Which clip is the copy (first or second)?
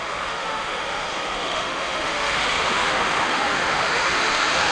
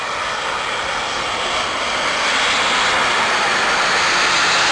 first